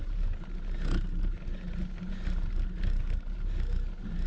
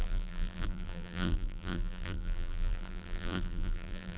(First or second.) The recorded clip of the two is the first